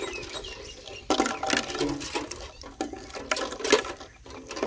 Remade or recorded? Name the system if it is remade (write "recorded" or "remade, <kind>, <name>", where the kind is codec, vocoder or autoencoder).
recorded